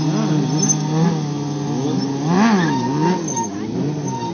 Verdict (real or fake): real